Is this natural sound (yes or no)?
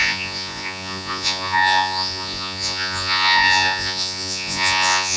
no